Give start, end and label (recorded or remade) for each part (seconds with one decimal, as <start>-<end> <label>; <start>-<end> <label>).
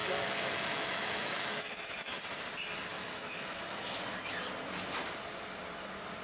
0.0-2.2 remade; 2.2-2.9 recorded; 2.9-4.0 remade; 4.0-6.2 recorded